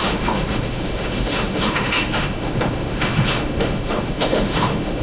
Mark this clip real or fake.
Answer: fake